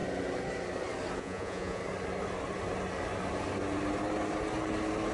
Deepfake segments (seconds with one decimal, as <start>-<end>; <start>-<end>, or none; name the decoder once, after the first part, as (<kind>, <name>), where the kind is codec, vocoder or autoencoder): 1.2-1.8 (vocoder, Vocos)